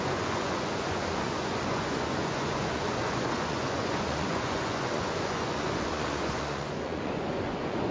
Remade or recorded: remade